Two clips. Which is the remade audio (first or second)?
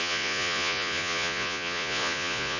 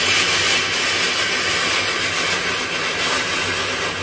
first